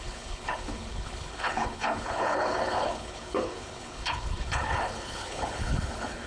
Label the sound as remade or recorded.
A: remade